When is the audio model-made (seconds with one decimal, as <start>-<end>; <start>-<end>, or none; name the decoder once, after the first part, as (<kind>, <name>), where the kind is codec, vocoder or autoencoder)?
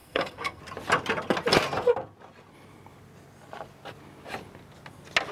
0.0-0.6 (codec, SNAC)